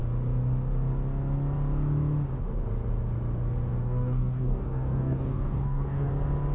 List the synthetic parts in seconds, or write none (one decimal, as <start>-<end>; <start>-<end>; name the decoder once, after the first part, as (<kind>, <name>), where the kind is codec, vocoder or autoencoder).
3.8-6.1 (codec, DAC)